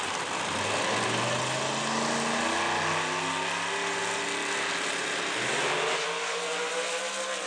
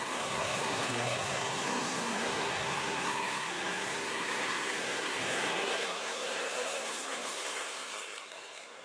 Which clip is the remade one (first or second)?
second